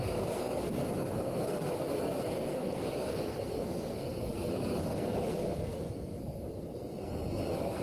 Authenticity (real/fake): fake